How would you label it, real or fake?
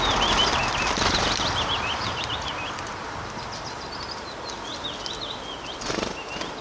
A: real